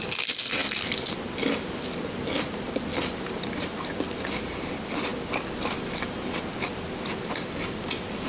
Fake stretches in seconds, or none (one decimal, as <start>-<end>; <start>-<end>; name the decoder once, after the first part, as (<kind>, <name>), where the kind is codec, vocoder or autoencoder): none